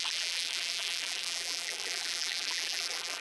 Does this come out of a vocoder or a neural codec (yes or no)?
yes